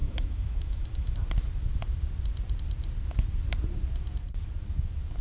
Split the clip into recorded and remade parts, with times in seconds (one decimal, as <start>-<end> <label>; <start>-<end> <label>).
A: 0.0-1.1 remade; 1.1-5.2 recorded